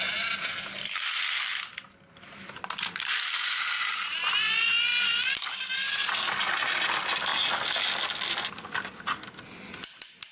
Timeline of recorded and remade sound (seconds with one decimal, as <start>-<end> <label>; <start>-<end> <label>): 0.0-10.3 recorded

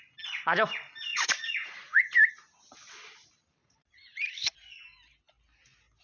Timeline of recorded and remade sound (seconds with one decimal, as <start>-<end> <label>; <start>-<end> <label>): 0.0-1.1 recorded; 1.1-2.2 remade; 2.2-3.6 recorded; 3.6-4.3 remade; 4.3-6.0 recorded

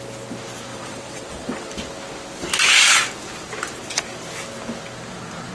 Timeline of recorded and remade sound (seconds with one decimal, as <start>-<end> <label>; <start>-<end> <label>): 0.0-0.7 recorded; 0.7-1.7 remade; 1.7-5.5 recorded

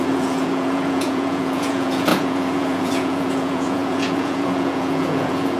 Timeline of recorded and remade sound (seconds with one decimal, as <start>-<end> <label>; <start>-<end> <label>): 0.0-5.6 remade